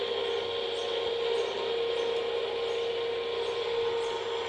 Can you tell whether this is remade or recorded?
recorded